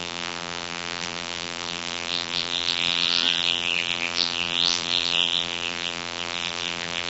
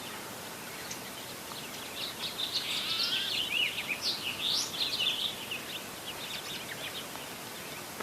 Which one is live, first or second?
second